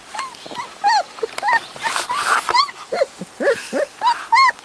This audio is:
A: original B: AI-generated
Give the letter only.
A